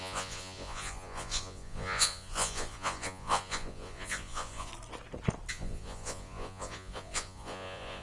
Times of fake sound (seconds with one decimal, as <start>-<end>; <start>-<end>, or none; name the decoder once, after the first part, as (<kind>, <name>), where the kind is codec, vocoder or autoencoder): 0.0-4.7 (vocoder, Vocos); 5.5-8.0